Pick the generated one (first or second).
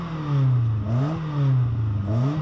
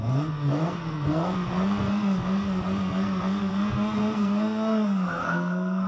second